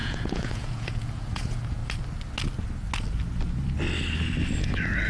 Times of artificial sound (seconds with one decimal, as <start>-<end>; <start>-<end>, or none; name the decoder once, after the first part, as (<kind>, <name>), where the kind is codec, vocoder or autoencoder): 0.0-1.8 (vocoder, Vocos)